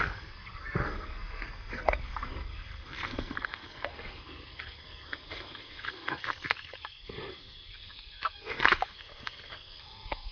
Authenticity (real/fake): fake